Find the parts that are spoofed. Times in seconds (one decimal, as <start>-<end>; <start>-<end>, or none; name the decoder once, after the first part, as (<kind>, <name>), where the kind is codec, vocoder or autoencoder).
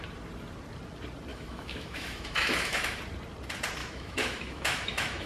1.3-3.0 (autoencoder, DAC-VAE); 3.8-5.3